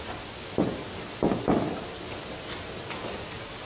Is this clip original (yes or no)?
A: yes